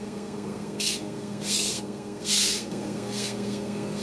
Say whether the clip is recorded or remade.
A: remade